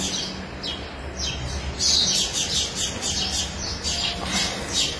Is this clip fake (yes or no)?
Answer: no